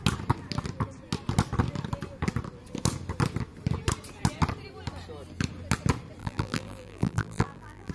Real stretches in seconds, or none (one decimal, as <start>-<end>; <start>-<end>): 0.0-6.2